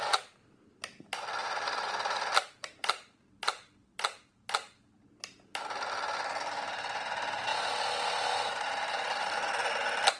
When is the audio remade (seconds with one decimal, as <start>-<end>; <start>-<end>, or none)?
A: 1.4-3.2

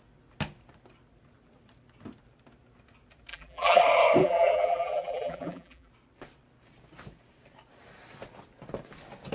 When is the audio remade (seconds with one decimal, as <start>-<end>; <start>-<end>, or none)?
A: 3.3-3.8; 4.2-5.9